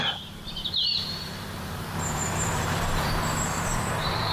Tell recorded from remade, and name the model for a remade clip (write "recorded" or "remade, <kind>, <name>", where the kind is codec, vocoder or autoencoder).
remade, vocoder, BigVGAN v2